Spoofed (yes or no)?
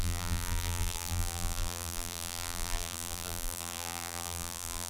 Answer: yes